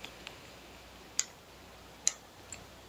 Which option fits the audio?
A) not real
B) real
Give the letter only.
B